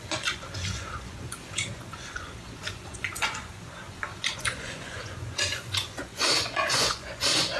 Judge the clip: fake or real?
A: fake